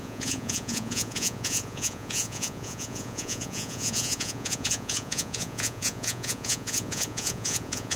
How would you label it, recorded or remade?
remade